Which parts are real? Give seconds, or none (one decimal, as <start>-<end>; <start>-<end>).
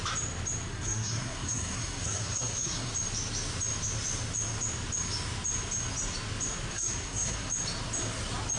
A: 0.0-0.7; 2.9-6.7; 7.5-8.6